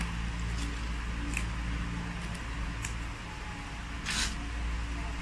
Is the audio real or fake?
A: real